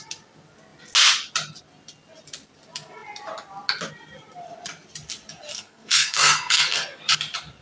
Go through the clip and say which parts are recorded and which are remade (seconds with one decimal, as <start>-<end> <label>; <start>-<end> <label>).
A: 0.0-5.5 recorded; 5.5-7.0 remade; 7.0-7.6 recorded

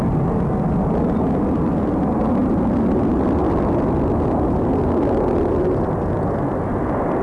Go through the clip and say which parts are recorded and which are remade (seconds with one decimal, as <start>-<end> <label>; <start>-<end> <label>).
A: 0.0-7.2 recorded